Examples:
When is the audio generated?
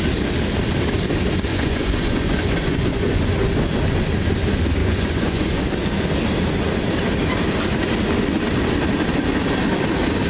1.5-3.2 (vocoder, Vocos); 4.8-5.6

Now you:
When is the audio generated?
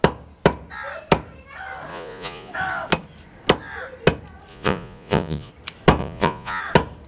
1.9-2.5 (vocoder, Vocos); 4.5-5.5; 6.0-6.6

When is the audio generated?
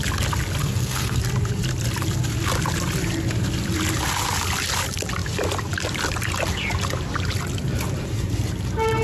0.6-1.2 (codec, SNAC)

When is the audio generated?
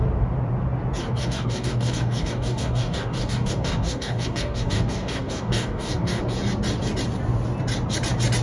1.2-6.2 (codec, DAC)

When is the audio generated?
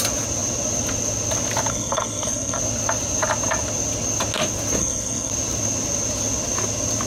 1.7-2.6 (codec, SNAC); 4.8-5.3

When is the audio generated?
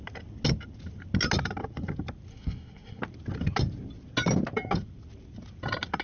2.3-3.0 (codec, SNAC)